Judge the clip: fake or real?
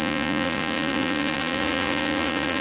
fake